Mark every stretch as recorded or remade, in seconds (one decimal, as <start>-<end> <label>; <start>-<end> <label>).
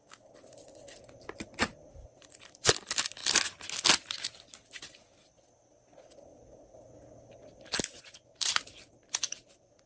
0.0-9.9 recorded